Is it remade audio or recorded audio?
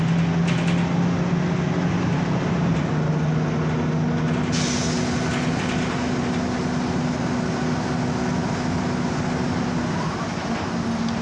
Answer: recorded